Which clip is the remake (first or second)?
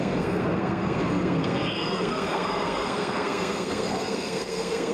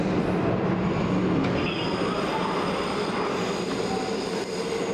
first